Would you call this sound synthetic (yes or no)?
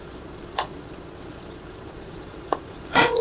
yes